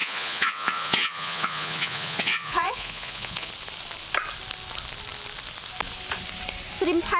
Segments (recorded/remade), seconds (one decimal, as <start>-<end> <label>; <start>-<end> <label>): 0.0-3.5 remade; 3.5-7.2 recorded